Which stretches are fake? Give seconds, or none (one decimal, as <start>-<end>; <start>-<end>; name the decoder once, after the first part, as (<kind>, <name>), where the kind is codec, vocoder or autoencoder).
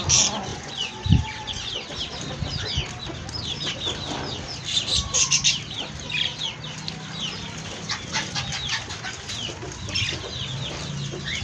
0.5-1.7 (vocoder, Vocos)